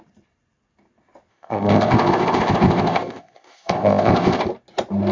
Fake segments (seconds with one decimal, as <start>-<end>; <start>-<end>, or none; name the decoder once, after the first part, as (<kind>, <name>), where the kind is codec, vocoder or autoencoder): 1.3-4.4 (codec, ZipCodec)